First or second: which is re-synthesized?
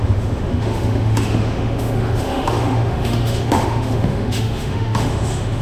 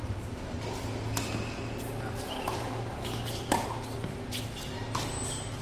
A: first